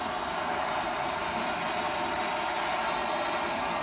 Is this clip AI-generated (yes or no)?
no